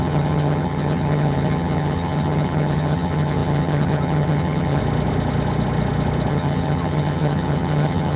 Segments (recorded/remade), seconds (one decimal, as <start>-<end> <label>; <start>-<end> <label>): 0.0-4.8 remade; 4.8-6.3 recorded; 6.3-8.2 remade